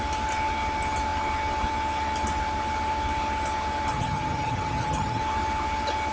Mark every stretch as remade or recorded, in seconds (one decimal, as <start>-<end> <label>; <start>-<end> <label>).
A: 0.0-3.9 recorded; 3.9-5.2 remade; 5.2-6.1 recorded

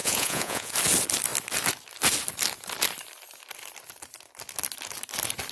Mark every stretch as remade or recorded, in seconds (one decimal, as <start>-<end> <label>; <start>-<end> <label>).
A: 0.0-0.7 remade; 0.7-5.5 recorded

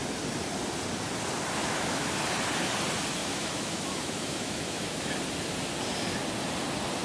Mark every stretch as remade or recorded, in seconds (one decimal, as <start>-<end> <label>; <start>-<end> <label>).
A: 0.0-1.6 recorded; 1.6-2.1 remade; 2.1-3.2 recorded; 3.2-5.1 remade; 5.1-7.0 recorded

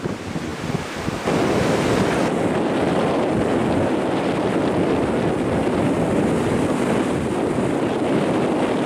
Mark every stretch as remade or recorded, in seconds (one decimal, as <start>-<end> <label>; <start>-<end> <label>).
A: 0.0-8.9 recorded

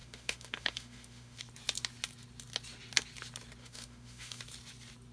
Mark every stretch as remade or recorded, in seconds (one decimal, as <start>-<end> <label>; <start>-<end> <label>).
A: 0.0-1.4 remade; 1.4-3.6 recorded; 3.6-4.4 remade; 4.4-5.1 recorded

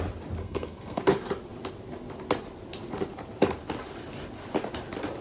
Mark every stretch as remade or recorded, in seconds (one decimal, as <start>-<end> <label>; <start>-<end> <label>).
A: 0.0-0.4 recorded; 0.4-1.0 remade; 1.0-5.2 recorded

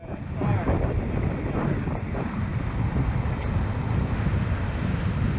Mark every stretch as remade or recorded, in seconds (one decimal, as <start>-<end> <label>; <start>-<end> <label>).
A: 0.0-5.4 recorded